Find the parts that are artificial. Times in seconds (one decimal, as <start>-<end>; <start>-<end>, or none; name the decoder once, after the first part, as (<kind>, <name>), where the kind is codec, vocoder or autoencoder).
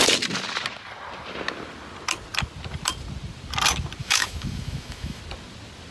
4.0-5.2 (autoencoder, DAC-VAE)